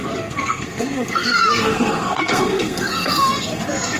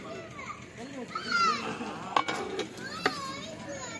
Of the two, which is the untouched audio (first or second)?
second